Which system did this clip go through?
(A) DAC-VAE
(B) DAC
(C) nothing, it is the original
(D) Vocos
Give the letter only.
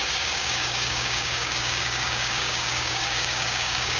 B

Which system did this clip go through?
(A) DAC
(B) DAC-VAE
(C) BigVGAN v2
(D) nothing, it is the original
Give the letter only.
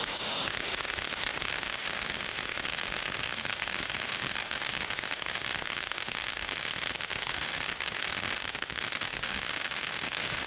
B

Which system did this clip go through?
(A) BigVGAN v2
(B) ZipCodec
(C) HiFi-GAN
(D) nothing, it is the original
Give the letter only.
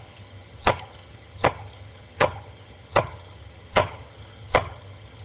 C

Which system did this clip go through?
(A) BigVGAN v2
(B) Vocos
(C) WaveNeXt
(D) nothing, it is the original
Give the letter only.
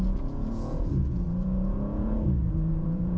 B